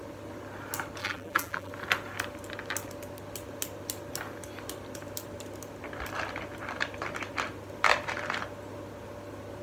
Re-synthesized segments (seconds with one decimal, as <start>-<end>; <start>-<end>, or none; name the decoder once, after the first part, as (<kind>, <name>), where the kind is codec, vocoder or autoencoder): 1.0-1.7 (vocoder, BigVGAN v2)